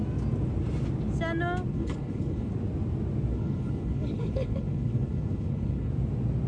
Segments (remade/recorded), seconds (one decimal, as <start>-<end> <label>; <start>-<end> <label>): 0.0-1.7 recorded; 1.7-2.5 remade; 2.5-3.3 recorded; 3.3-5.9 remade; 5.9-6.5 recorded